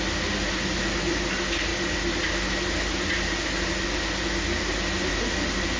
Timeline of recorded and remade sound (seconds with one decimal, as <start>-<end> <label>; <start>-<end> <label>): 0.0-5.8 recorded